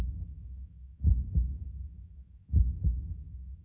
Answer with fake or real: fake